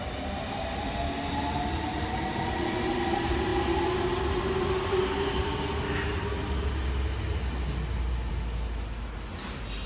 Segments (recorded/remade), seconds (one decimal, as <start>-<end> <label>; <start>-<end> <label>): 0.0-9.9 recorded